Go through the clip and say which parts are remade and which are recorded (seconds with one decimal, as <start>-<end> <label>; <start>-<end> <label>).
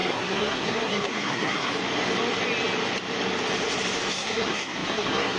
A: 0.0-1.7 remade; 1.7-4.1 recorded; 4.1-5.4 remade